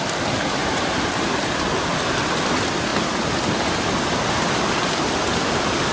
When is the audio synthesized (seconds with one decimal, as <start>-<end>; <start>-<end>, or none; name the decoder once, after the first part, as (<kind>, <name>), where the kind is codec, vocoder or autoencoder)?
0.6-1.4 (vocoder, BigVGAN v2)